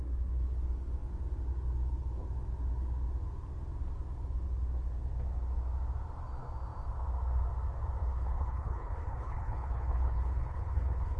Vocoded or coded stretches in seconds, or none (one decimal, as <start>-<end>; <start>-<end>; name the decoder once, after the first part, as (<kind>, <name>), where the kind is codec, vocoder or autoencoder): 8.0-11.2 (codec, HILCodec)